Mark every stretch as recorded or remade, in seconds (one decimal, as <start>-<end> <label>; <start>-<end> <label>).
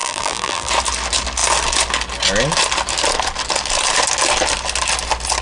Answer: 0.0-0.7 remade; 0.7-5.4 recorded